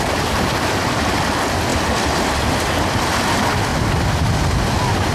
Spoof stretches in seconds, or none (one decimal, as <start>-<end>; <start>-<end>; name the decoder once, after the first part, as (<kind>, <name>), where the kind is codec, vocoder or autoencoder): none